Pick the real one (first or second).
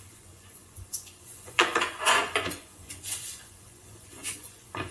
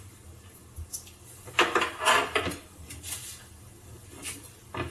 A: second